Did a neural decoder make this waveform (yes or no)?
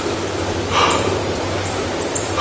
yes